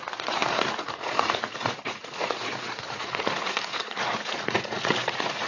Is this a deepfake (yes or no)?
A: yes